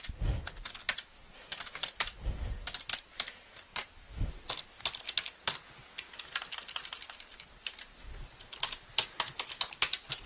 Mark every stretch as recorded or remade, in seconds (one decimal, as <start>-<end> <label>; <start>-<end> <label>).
0.0-10.3 recorded